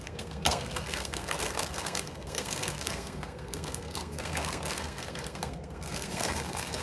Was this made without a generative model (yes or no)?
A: no